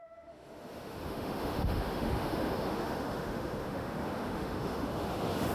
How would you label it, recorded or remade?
remade